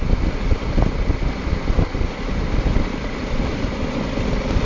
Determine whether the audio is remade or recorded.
remade